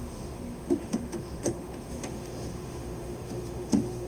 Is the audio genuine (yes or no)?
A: no